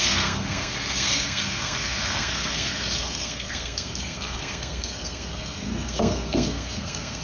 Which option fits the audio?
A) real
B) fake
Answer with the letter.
B